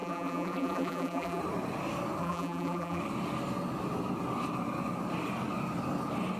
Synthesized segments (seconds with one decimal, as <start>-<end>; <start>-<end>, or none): 0.0-1.4; 2.2-3.0